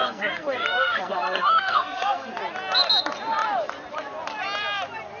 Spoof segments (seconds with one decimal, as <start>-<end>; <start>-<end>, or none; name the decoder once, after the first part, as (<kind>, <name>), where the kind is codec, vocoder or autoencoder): 0.0-2.4 (codec, SNAC)